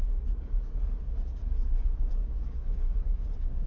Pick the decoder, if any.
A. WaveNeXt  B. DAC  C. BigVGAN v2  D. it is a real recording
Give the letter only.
B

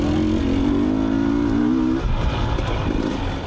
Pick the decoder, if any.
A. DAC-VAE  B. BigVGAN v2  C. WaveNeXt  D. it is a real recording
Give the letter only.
D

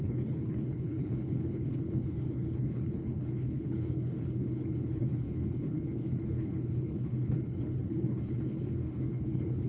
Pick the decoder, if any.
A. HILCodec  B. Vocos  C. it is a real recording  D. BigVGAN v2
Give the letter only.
A